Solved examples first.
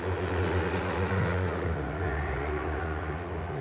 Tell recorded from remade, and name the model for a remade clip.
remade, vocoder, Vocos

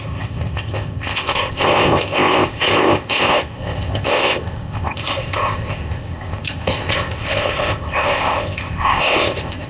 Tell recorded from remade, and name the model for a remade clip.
remade, codec, ZipCodec